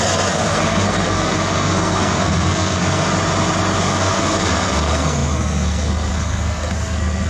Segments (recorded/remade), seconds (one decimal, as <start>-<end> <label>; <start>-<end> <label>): 0.0-3.1 remade; 3.1-3.8 recorded; 3.8-7.3 remade